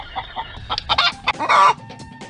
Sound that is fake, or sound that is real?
real